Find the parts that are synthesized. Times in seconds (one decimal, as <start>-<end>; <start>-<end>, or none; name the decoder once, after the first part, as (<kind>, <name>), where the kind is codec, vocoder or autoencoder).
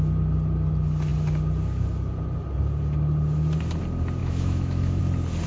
4.2-5.0 (autoencoder, DAC-VAE)